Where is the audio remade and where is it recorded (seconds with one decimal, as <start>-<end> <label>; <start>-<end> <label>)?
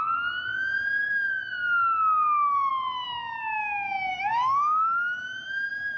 0.0-4.3 recorded; 4.3-5.0 remade; 5.0-6.0 recorded